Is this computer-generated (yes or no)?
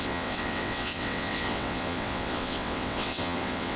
yes